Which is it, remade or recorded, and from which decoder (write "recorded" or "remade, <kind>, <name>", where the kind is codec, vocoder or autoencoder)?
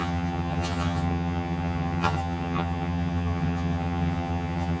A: remade, vocoder, HiFi-GAN